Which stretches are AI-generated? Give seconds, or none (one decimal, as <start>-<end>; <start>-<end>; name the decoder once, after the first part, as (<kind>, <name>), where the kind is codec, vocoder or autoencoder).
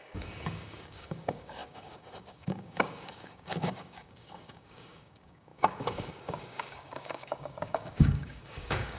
0.0-9.0 (codec, DAC)